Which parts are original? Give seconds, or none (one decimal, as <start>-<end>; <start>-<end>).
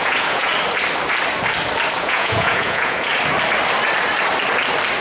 0.5-2.0; 3.1-5.0